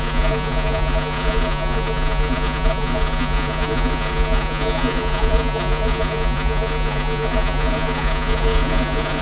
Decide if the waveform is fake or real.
fake